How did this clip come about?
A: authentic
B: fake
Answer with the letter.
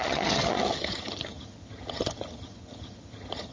B